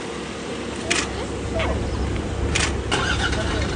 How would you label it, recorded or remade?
recorded